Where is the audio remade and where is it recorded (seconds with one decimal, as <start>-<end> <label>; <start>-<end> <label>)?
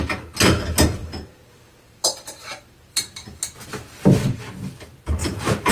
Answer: 0.0-1.0 recorded; 1.0-3.4 remade; 3.4-5.2 recorded; 5.2-5.7 remade